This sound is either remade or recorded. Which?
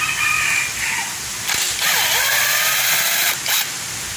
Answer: recorded